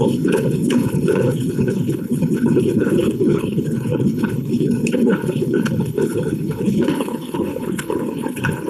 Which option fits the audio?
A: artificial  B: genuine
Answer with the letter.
A